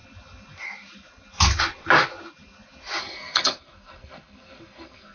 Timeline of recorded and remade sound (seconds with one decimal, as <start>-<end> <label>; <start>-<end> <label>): 0.0-3.0 recorded; 3.0-5.1 remade